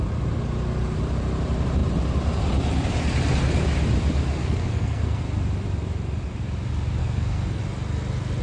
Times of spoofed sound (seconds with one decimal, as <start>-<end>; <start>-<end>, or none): 4.4-5.2; 7.0-7.6